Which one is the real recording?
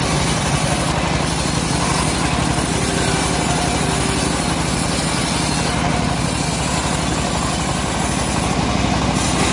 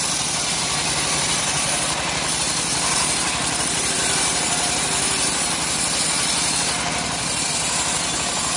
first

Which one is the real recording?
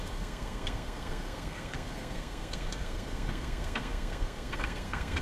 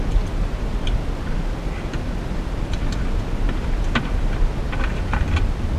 second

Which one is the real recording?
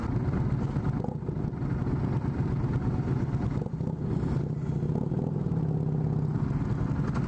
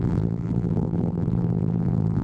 first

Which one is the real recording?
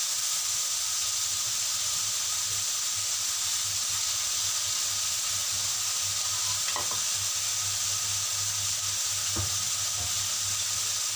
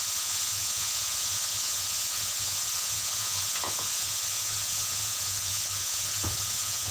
first